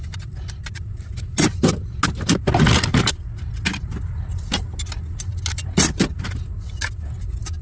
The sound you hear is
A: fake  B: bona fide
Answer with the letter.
B